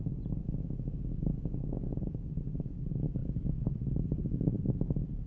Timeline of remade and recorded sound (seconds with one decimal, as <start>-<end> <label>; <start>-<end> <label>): 0.0-1.3 recorded; 1.3-2.1 remade; 2.1-5.3 recorded